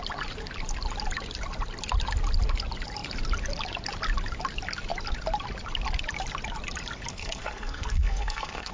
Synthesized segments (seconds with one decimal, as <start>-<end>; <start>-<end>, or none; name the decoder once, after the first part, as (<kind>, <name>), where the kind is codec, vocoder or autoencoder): 7.1-8.7 (codec, SNAC)